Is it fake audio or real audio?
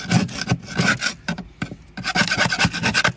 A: real